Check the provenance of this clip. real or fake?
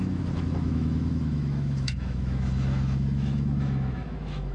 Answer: fake